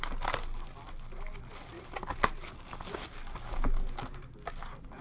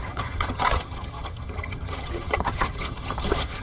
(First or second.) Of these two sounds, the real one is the first